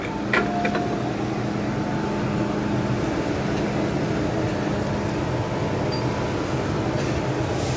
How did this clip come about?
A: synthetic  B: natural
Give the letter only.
B